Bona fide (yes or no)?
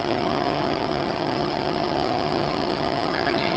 no